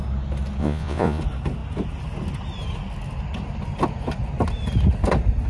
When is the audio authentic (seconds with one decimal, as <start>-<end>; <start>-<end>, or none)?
0.0-0.6; 1.2-5.5

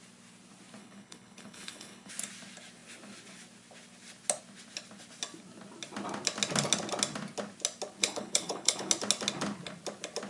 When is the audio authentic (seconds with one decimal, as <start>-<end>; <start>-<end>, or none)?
0.0-0.8; 2.1-8.0; 8.9-10.3

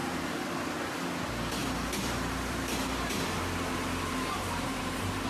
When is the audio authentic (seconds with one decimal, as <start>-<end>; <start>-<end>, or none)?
0.5-1.6; 4.8-5.3

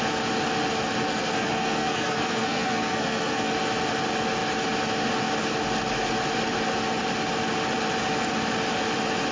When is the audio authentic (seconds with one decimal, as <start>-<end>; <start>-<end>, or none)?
0.0-1.1; 3.5-9.3

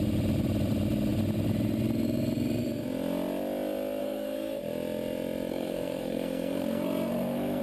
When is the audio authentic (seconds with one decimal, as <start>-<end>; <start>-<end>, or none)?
0.0-4.0; 4.6-5.5

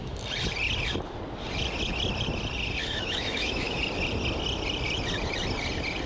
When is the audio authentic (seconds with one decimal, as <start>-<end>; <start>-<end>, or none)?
0.0-2.8; 3.8-6.1

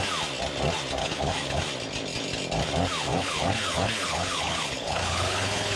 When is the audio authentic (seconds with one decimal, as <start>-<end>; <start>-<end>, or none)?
0.0-1.0; 1.6-3.1